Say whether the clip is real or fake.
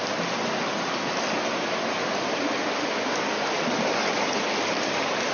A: real